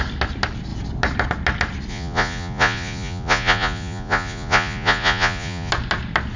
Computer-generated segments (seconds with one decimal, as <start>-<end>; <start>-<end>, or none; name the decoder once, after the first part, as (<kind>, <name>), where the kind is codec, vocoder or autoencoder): 1.9-5.7 (vocoder, Vocos)